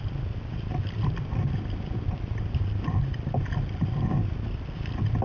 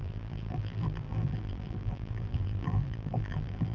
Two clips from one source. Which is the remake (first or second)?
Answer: second